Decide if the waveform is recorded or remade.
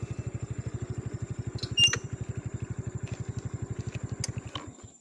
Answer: recorded